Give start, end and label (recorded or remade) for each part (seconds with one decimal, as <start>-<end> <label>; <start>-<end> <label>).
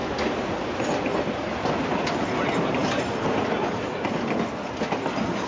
0.0-5.5 recorded